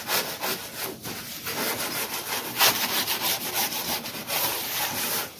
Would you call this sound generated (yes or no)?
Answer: no